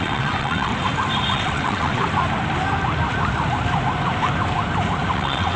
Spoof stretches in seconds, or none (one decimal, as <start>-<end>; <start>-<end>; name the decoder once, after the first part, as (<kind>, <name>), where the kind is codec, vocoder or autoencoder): 0.0-0.7 (vocoder, WaveNeXt); 1.3-2.0; 5.1-5.6